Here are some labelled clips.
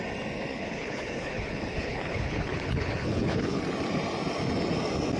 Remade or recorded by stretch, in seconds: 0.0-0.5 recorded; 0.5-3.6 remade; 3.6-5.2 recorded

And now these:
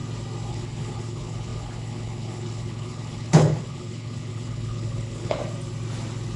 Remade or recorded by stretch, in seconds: 0.0-0.5 recorded; 0.5-5.4 remade; 5.4-6.4 recorded

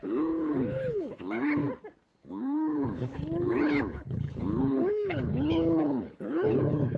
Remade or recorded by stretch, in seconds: 0.0-1.6 remade; 1.6-2.3 recorded; 2.3-7.0 remade

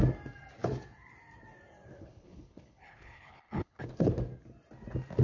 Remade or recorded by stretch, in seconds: 0.0-1.9 recorded; 1.9-4.1 remade; 4.1-5.2 recorded

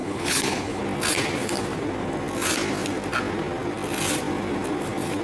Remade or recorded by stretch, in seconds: 0.0-0.8 remade; 0.8-5.2 recorded

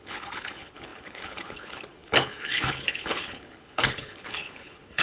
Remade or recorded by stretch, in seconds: 0.0-5.0 remade

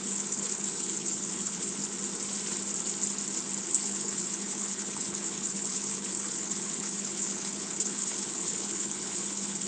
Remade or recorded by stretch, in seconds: 0.0-1.8 remade; 1.8-3.6 recorded; 3.6-9.7 remade

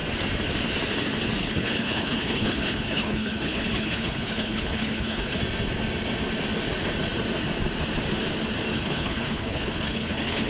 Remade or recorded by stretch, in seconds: 0.0-1.4 recorded; 1.4-5.4 remade; 5.4-8.7 recorded; 8.7-10.5 remade